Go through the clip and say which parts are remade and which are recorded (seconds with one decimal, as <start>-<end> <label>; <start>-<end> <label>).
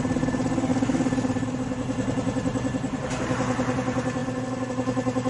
0.0-5.3 recorded